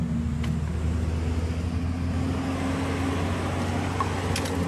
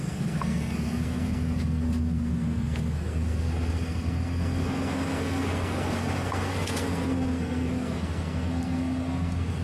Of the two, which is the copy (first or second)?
second